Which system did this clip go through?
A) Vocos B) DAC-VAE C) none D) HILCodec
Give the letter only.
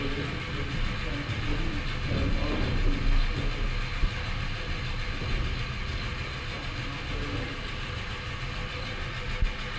C